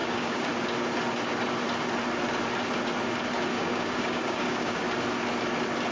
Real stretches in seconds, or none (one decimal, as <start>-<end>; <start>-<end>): 0.5-3.5; 4.8-5.9